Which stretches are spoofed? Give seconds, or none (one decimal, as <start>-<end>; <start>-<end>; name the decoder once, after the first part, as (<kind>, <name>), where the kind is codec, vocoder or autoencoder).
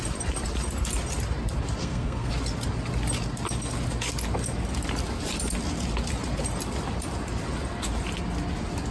1.8-2.3 (codec, SNAC)